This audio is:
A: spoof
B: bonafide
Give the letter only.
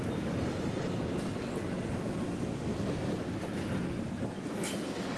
B